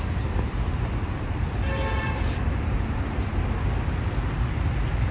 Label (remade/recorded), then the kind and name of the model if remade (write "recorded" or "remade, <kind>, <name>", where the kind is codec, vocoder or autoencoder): recorded